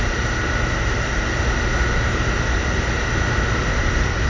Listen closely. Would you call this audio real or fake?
real